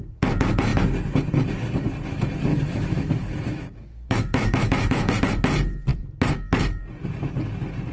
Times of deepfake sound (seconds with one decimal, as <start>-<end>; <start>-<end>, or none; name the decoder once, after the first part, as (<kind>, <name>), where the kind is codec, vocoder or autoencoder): 2.5-5.1 (autoencoder, DAC-VAE)